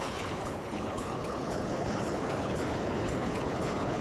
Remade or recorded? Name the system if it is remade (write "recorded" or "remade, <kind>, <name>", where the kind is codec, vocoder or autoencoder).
remade, codec, HILCodec